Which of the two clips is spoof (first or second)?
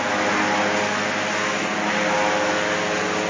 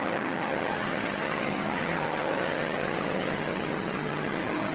second